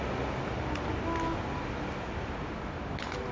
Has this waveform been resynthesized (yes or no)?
no